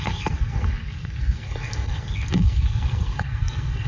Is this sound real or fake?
fake